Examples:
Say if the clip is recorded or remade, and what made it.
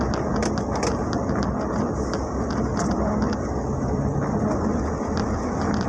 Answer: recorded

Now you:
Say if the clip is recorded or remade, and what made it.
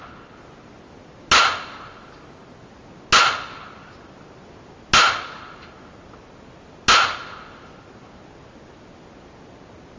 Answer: recorded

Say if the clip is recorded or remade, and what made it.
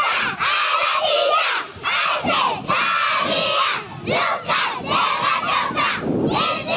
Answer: recorded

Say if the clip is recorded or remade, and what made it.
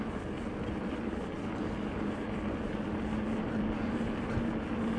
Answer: remade, vocoder, BigVGAN v2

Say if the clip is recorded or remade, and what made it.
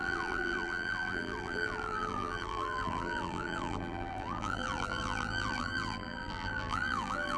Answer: remade, vocoder, BigVGAN v2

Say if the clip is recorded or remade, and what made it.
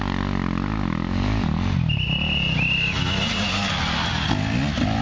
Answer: recorded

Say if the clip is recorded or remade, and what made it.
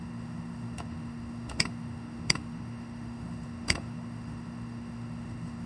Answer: remade, autoencoder, DAC-VAE